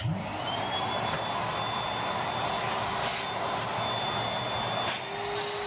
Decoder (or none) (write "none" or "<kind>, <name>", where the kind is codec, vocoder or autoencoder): none